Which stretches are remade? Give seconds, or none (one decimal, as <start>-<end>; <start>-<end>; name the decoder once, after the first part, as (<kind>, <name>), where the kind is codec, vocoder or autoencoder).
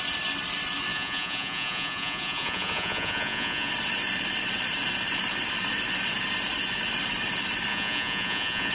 0.9-3.7 (vocoder, Vocos); 7.7-8.7